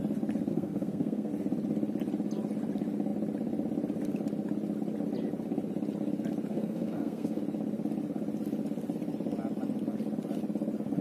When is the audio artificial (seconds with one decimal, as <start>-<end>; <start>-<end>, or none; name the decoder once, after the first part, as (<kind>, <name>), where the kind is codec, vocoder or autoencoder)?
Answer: 0.5-1.3 (codec, SNAC); 6.5-7.4